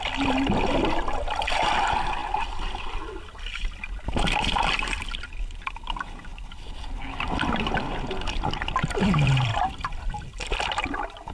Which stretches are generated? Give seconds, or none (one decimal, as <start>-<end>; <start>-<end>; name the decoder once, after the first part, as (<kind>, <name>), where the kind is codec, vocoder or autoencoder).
none